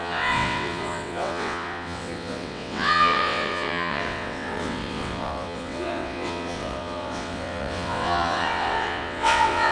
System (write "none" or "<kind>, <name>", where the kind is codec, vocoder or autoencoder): vocoder, WaveNeXt